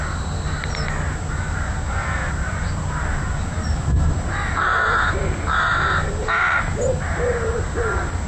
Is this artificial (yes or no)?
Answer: no